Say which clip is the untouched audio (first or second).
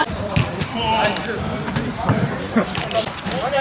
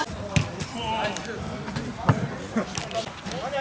second